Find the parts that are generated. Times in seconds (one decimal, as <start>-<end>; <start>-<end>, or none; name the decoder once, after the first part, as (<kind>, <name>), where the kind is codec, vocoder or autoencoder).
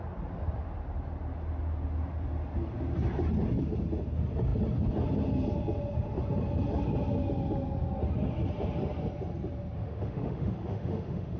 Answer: 9.8-11.4 (autoencoder, DAC-VAE)